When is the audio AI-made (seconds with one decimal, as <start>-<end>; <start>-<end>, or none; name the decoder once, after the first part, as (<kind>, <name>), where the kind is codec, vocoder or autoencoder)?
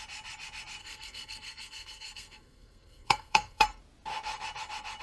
0.8-3.8 (codec, SNAC)